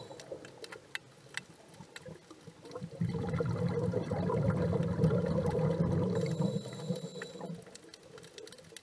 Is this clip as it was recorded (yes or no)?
yes